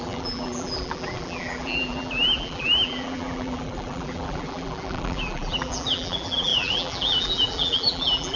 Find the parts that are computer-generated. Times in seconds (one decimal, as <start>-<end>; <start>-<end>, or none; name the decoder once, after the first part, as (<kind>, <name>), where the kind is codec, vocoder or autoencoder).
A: 0.0-8.4 (vocoder, BigVGAN v2)